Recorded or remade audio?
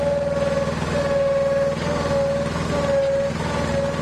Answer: recorded